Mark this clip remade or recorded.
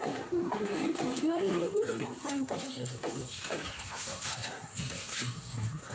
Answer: remade